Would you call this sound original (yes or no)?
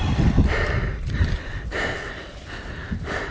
yes